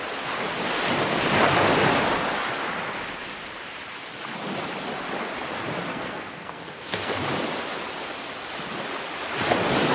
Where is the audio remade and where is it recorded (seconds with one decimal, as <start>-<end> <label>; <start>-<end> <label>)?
0.0-5.9 recorded; 5.9-7.1 remade; 7.1-9.9 recorded